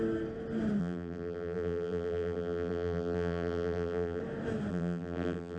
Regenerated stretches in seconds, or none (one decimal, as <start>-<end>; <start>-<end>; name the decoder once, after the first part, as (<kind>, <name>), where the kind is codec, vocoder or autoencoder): 0.8-4.2 (vocoder, BigVGAN v2); 4.7-5.6